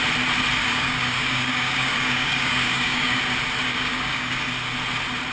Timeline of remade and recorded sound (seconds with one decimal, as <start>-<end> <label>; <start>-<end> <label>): 0.0-0.6 recorded; 0.6-3.2 remade; 3.2-3.6 recorded; 3.6-4.5 remade; 4.5-5.3 recorded